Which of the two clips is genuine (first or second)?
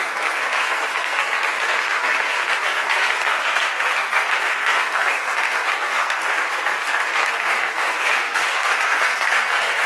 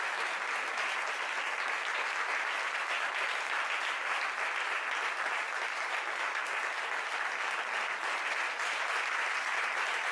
second